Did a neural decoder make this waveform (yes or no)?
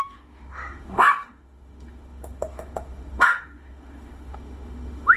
yes